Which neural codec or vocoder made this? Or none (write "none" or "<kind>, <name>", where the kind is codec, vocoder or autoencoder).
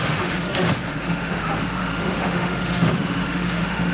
autoencoder, DAC-VAE